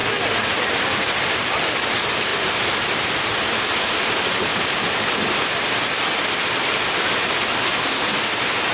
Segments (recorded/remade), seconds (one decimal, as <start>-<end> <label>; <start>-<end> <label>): 0.0-8.7 recorded